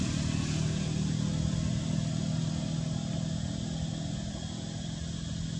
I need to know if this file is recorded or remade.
recorded